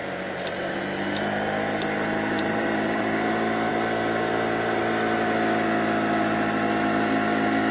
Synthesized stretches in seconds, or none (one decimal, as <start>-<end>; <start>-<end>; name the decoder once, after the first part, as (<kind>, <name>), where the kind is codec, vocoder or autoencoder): 0.0-3.3 (vocoder, BigVGAN v2)